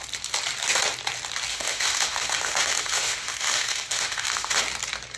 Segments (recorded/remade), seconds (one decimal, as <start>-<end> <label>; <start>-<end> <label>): 0.0-1.5 recorded; 1.5-4.6 remade; 4.6-5.2 recorded

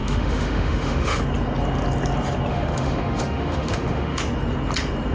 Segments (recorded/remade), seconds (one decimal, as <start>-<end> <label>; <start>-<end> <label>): 0.0-1.2 remade; 1.2-2.5 recorded; 2.5-4.2 remade; 4.2-5.1 recorded

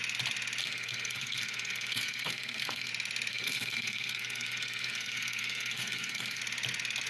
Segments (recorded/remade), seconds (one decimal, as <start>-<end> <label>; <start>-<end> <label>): 0.0-0.6 recorded; 0.6-2.9 remade; 2.9-3.3 recorded; 3.3-6.4 remade; 6.4-7.1 recorded

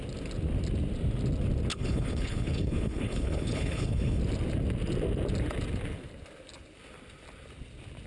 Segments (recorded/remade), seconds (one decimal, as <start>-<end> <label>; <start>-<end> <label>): 0.0-1.7 recorded; 1.7-4.2 remade; 4.2-8.1 recorded

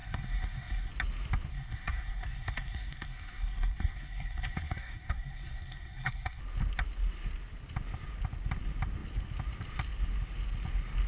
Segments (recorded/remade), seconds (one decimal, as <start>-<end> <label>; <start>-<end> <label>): 0.0-0.9 remade; 0.9-1.5 recorded; 1.5-6.4 remade; 6.4-11.1 recorded